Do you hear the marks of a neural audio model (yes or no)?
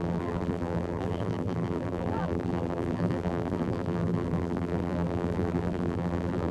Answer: yes